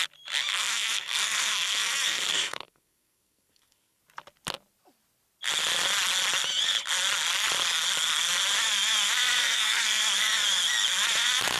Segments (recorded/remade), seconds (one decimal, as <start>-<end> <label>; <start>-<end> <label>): 0.0-0.5 recorded; 0.5-4.0 remade; 4.0-9.4 recorded; 9.4-10.0 remade; 10.0-11.6 recorded